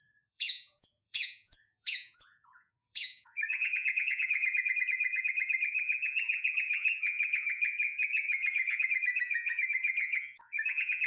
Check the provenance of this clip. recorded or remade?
remade